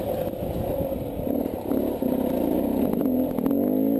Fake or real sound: real